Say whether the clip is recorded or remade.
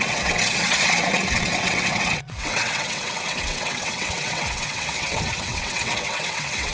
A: remade